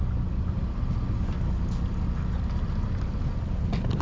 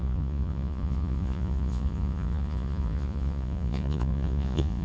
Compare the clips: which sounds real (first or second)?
first